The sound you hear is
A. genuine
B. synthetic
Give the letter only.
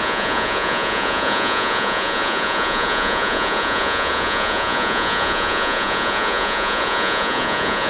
B